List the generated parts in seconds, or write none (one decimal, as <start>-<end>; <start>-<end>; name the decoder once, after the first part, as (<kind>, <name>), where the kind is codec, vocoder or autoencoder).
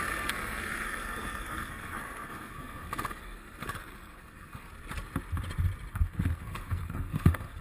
0.0-4.7 (codec, SNAC); 5.9-7.6